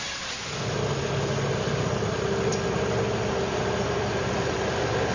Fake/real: real